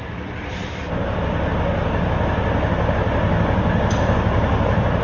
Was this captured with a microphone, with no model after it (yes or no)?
yes